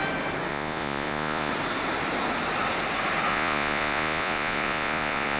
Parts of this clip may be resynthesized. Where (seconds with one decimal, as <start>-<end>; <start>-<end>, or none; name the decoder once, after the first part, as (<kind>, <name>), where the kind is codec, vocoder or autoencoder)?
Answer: 0.5-1.5 (vocoder, Vocos); 3.3-5.4